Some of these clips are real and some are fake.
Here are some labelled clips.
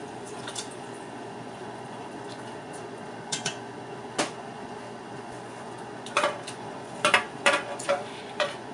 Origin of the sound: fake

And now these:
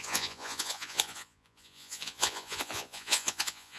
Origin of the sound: fake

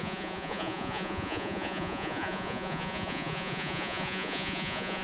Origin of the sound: fake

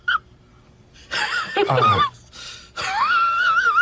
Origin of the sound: real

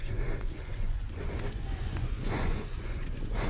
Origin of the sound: fake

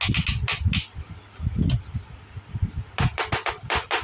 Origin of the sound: real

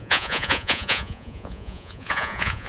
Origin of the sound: fake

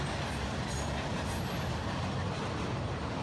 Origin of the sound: real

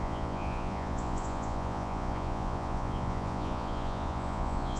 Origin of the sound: fake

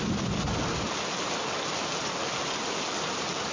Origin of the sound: real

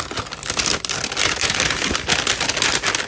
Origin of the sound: real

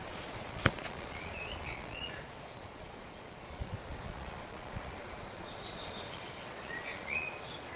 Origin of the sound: fake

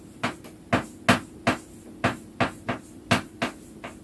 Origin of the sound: real